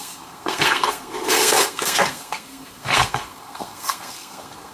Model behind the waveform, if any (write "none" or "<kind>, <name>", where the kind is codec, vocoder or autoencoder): codec, SNAC